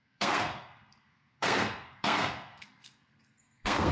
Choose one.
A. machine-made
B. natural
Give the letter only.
A